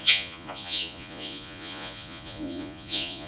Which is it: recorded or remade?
remade